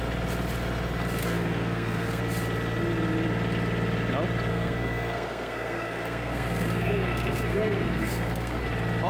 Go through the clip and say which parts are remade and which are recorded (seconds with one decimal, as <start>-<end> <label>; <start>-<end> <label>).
0.0-1.2 recorded; 1.2-2.2 remade; 2.2-4.5 recorded; 4.5-8.6 remade; 8.6-9.1 recorded